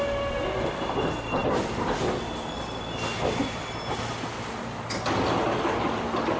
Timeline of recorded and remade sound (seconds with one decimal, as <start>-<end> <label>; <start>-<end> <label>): 0.0-6.4 recorded